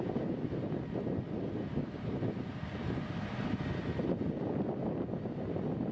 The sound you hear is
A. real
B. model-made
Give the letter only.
A